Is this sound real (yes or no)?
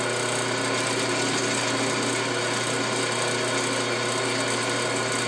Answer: yes